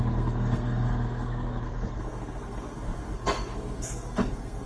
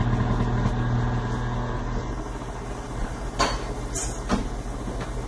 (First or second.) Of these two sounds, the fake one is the first